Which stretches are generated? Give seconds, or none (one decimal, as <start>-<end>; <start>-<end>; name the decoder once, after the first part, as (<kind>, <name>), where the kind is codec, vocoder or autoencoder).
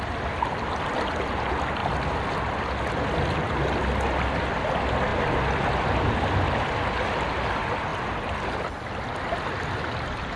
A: 1.8-2.6 (vocoder, BigVGAN v2); 5.1-6.0; 7.9-8.5